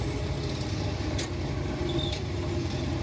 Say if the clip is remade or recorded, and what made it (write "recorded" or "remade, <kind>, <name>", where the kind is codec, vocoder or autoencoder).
recorded